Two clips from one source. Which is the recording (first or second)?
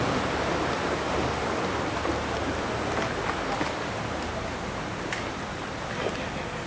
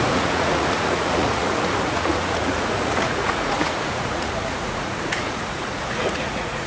first